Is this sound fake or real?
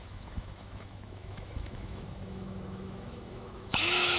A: fake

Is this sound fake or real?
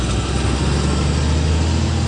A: real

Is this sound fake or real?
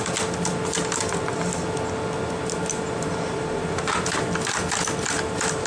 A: real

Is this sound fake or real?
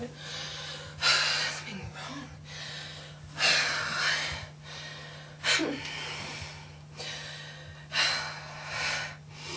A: real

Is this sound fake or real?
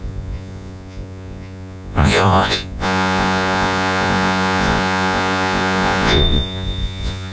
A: fake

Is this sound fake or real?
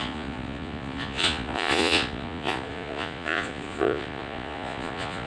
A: fake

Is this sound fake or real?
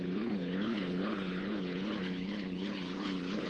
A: fake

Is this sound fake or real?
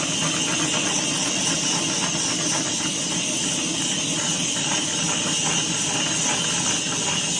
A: real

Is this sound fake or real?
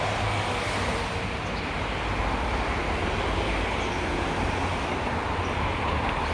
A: real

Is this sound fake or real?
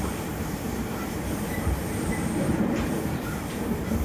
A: fake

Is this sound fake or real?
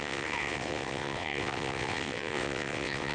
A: fake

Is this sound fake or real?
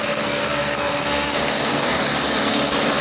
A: fake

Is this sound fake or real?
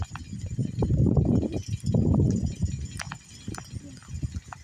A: real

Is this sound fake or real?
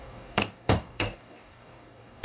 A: fake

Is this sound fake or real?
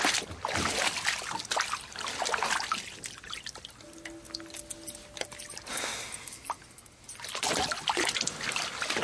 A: real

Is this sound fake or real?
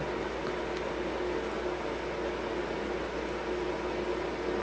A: real